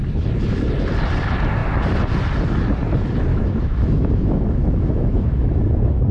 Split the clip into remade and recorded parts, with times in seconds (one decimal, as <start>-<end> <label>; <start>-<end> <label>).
0.0-3.3 recorded; 3.3-6.1 remade